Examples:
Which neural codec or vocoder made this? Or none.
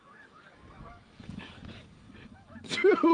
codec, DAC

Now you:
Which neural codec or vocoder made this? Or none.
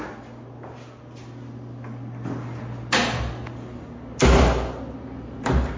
none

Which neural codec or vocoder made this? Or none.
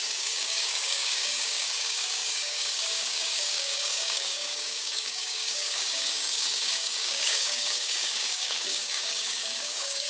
codec, DAC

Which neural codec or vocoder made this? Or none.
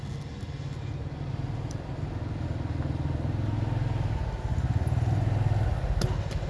none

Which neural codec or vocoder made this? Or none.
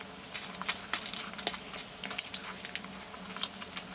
none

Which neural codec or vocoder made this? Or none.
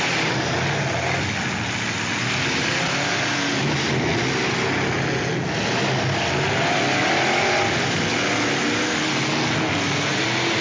none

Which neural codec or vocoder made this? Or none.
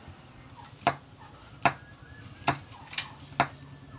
none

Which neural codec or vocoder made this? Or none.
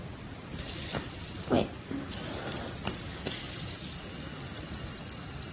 none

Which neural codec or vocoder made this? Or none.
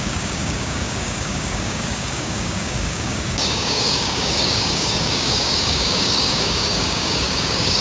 codec, DAC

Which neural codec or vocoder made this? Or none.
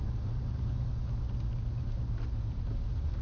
none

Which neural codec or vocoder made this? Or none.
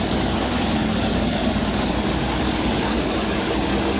codec, DAC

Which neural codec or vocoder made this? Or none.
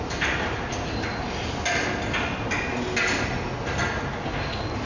none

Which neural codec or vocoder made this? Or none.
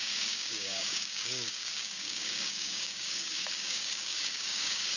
codec, DAC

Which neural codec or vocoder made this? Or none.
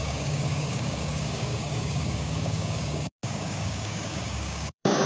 codec, DAC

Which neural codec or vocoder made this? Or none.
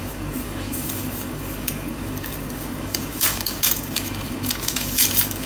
codec, DAC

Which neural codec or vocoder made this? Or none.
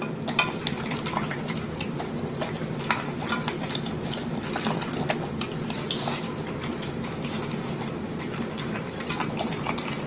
none